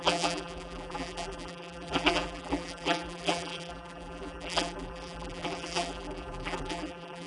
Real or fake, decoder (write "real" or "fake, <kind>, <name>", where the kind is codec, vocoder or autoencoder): fake, vocoder, BigVGAN v2